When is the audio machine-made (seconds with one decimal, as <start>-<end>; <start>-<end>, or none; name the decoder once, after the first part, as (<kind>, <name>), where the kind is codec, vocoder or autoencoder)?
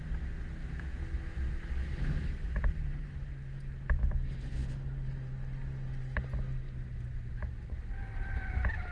0.6-1.3 (autoencoder, DAC-VAE); 1.8-2.6